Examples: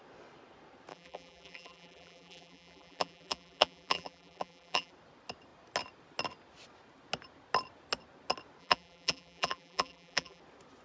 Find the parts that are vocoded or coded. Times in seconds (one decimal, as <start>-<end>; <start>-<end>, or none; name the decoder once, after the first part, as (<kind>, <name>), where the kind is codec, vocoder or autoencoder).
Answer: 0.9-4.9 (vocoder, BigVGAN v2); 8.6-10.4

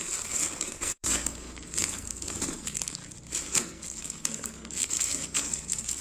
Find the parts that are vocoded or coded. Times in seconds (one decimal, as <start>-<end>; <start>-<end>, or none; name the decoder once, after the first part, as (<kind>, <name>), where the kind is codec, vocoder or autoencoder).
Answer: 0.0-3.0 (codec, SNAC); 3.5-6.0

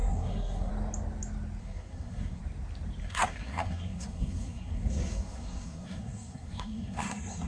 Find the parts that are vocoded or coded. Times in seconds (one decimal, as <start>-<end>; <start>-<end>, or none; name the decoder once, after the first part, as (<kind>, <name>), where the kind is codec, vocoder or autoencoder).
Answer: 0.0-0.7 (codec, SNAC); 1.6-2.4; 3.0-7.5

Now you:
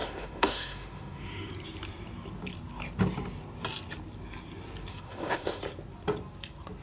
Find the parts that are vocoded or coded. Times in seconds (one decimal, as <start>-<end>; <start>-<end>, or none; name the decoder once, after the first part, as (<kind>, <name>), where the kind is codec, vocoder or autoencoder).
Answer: 0.0-1.5 (autoencoder, DAC-VAE); 4.9-5.6

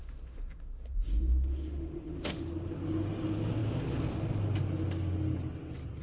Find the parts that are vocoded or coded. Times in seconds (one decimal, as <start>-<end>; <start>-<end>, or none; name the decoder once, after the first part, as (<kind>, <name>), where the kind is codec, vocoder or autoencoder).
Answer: 0.0-2.5 (autoencoder, DAC-VAE)